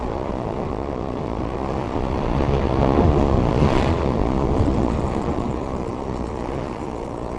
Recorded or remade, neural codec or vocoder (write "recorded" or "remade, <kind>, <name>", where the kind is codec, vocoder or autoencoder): remade, vocoder, Vocos